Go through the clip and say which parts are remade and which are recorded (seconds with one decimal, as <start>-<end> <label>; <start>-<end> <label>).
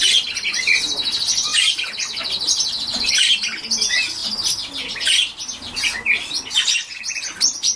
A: 0.0-7.8 recorded